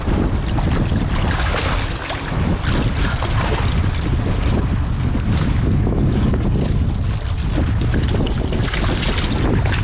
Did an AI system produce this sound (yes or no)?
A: no